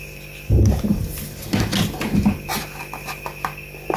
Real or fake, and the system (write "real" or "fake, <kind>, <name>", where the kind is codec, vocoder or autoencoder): real